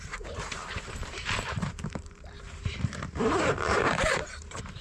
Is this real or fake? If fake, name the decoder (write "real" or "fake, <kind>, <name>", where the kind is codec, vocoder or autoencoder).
fake, vocoder, BigVGAN v2